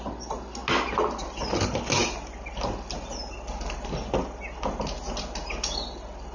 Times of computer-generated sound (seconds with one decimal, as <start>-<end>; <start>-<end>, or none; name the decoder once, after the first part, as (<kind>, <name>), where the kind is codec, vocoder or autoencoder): none